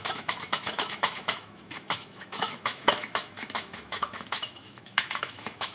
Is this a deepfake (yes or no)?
yes